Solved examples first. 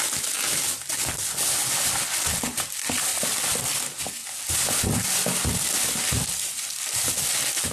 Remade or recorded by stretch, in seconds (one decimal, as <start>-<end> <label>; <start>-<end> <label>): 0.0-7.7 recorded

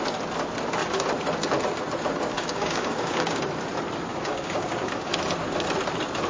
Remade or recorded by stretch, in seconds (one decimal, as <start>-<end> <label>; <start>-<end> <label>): 0.0-2.3 recorded; 2.3-3.4 remade; 3.4-4.1 recorded; 4.1-5.1 remade; 5.1-6.3 recorded

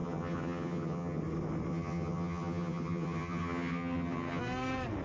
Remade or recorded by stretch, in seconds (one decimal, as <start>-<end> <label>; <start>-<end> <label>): 0.0-1.2 remade; 1.2-1.7 recorded; 1.7-4.4 remade; 4.4-5.0 recorded

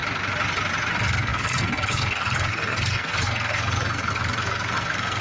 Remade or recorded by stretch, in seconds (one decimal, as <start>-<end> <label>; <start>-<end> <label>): 0.0-0.9 recorded; 0.9-5.2 remade